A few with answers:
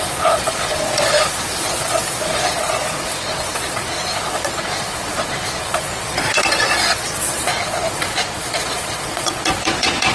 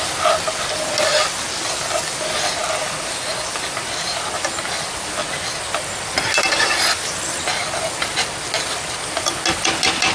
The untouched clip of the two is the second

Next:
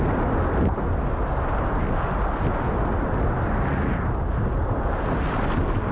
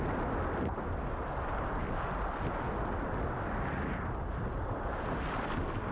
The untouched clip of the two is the first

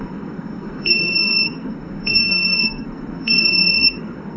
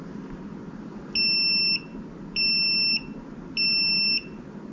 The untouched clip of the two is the second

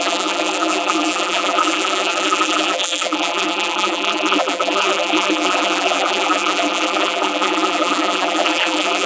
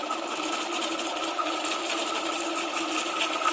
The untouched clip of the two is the second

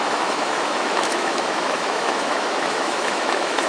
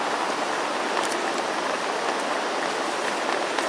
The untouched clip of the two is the second